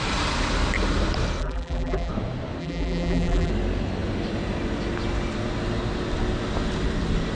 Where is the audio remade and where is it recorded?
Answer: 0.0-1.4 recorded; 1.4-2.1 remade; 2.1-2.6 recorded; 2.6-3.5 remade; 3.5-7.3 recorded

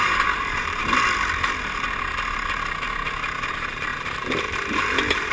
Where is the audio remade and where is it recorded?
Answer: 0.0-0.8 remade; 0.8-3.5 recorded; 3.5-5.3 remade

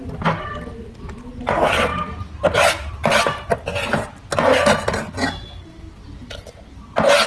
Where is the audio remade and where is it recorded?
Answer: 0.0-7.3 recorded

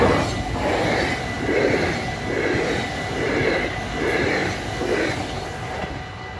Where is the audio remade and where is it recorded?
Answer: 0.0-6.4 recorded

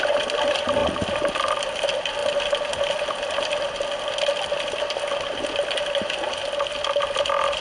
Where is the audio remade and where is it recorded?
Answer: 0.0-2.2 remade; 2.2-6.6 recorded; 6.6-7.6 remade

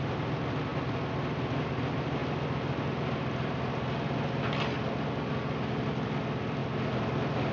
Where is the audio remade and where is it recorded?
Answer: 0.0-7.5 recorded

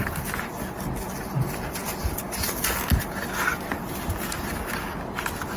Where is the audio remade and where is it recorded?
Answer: 0.0-5.6 recorded